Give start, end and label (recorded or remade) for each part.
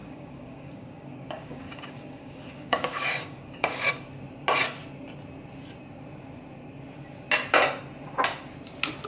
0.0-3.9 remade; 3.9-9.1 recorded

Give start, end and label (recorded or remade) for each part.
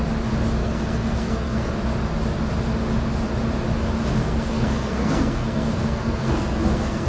0.0-0.6 recorded; 0.6-1.7 remade; 1.7-4.2 recorded; 4.2-7.1 remade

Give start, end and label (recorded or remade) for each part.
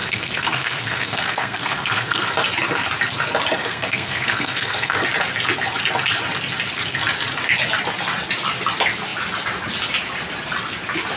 0.0-2.3 remade; 2.3-3.6 recorded; 3.6-5.0 remade; 5.0-11.2 recorded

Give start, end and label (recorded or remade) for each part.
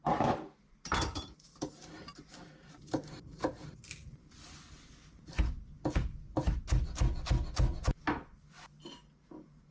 0.0-3.7 remade; 3.7-9.7 recorded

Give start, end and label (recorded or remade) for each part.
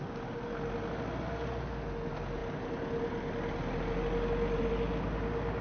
0.0-5.6 recorded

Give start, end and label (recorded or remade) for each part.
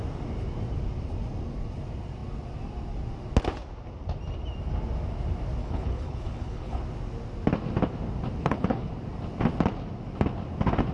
0.0-5.6 recorded; 5.6-6.8 remade; 6.8-8.4 recorded; 8.4-8.9 remade; 8.9-10.9 recorded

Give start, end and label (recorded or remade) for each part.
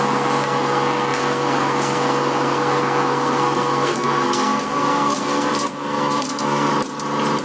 0.0-6.7 remade; 6.7-7.4 recorded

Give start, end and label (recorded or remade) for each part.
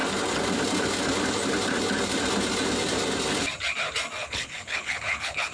0.0-4.2 recorded; 4.2-5.5 remade